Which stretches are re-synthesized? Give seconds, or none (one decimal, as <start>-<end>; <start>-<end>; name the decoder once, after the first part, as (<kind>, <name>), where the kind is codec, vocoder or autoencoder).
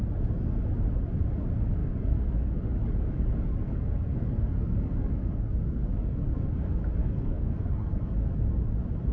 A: 1.8-6.5 (codec, DAC); 7.0-8.4